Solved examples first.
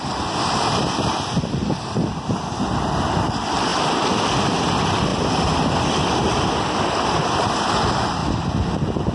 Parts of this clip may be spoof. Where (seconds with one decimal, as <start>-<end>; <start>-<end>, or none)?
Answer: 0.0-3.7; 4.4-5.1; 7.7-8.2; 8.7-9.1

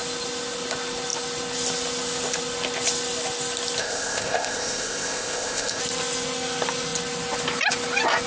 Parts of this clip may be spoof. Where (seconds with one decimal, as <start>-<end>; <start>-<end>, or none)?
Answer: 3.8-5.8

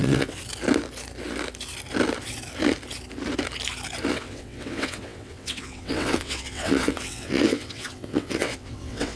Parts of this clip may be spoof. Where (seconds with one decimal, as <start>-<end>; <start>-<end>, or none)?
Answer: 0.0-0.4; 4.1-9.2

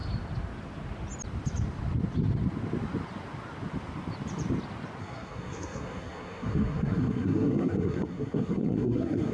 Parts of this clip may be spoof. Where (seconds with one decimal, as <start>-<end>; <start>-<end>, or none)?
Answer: 5.0-9.3